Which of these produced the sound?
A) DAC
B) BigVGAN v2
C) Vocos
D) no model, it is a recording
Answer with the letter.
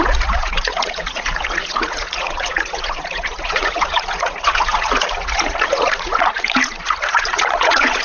C